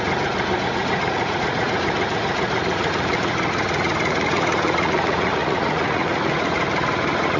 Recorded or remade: remade